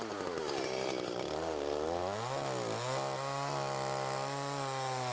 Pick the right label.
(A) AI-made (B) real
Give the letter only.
B